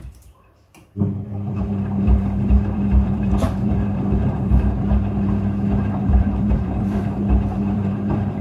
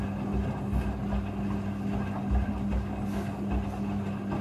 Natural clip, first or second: second